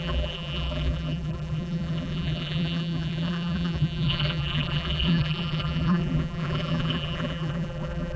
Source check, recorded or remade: remade